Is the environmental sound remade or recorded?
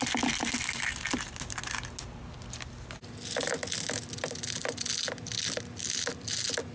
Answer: recorded